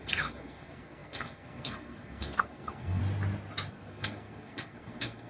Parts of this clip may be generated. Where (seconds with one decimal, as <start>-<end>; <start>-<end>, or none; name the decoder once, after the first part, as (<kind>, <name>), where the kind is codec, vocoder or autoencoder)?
0.0-3.0 (codec, SNAC); 3.7-5.3